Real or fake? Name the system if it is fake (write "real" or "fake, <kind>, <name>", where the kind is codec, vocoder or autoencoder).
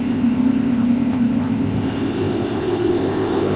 fake, codec, ZipCodec